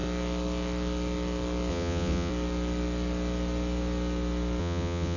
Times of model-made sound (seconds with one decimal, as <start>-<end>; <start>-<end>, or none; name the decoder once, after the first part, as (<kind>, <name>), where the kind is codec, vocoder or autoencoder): 1.7-2.3 (vocoder, WaveNeXt); 4.6-5.2